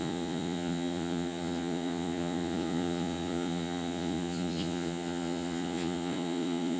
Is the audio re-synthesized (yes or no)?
yes